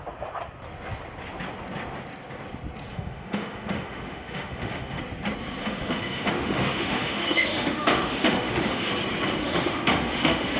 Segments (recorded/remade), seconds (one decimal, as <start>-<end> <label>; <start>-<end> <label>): 0.0-2.9 recorded; 2.9-5.0 remade; 5.0-5.6 recorded; 5.6-8.9 remade; 8.9-9.4 recorded; 9.4-10.6 remade